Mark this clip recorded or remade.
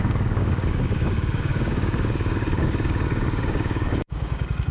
remade